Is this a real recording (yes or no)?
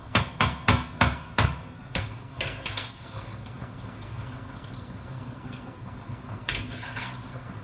no